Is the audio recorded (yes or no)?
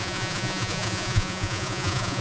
no